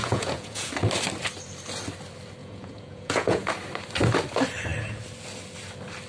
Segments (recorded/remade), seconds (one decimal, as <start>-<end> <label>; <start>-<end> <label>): 0.0-0.7 remade; 0.7-2.4 recorded; 2.4-3.5 remade; 3.5-6.1 recorded